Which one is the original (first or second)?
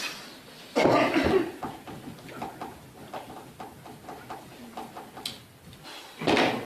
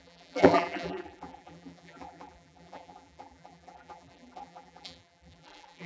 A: first